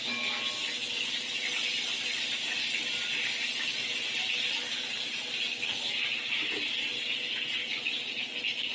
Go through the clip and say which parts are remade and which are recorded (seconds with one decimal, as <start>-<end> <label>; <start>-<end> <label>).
0.0-8.7 recorded